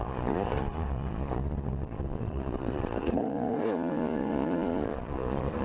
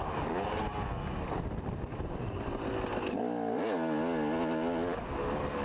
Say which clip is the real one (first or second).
second